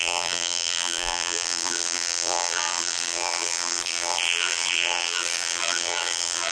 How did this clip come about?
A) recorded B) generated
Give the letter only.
B